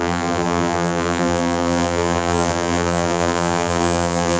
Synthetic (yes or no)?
yes